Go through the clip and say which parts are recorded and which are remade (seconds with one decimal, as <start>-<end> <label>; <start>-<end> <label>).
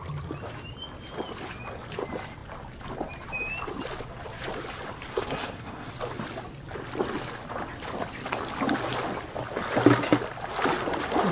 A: 0.0-5.1 recorded; 5.1-5.9 remade; 5.9-11.3 recorded